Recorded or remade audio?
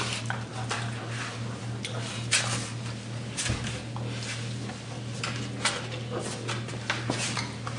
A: recorded